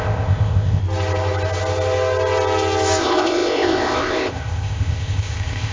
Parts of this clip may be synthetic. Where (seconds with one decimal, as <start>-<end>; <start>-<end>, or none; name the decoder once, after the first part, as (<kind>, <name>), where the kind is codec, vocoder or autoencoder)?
0.0-0.8 (codec, ZipCodec); 3.0-5.7